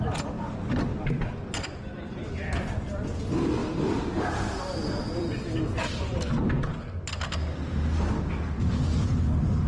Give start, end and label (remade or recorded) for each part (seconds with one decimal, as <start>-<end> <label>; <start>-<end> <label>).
0.0-0.9 recorded; 0.9-2.1 remade; 2.1-3.6 recorded; 3.6-5.6 remade; 5.6-9.7 recorded